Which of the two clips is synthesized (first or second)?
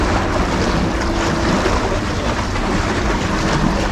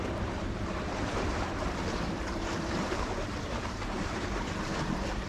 second